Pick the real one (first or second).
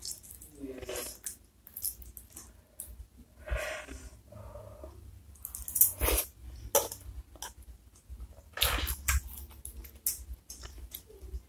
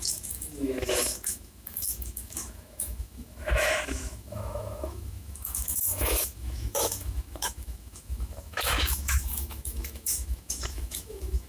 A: first